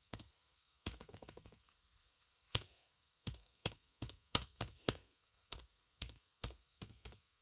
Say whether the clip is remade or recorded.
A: remade